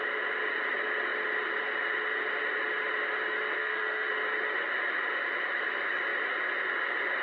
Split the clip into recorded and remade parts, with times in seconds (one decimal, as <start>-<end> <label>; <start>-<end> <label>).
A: 0.0-3.6 recorded; 3.6-4.1 remade; 4.1-7.2 recorded